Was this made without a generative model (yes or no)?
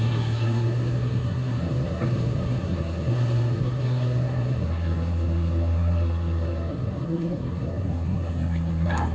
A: no